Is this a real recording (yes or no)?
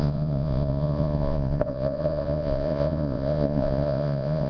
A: no